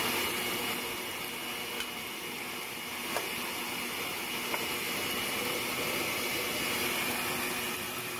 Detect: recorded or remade recorded